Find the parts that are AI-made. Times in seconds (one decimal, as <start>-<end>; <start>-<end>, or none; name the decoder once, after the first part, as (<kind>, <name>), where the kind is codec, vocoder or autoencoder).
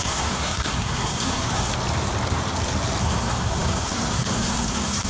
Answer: 0.0-1.7 (codec, SNAC); 3.0-5.1